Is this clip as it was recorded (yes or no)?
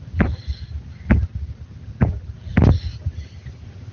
yes